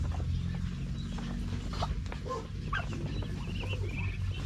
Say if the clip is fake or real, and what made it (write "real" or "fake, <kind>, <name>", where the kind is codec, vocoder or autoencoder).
real